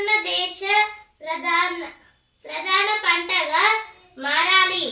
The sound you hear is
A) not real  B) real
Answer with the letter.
B